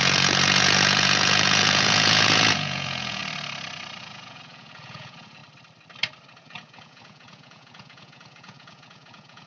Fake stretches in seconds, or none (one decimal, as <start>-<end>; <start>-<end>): 0.0-3.2; 4.0-5.4; 6.4-9.5